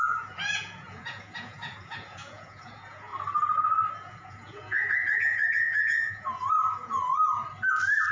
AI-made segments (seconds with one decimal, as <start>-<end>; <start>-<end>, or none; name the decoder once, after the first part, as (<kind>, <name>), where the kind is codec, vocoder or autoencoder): 0.0-3.1 (vocoder, Vocos); 3.9-7.1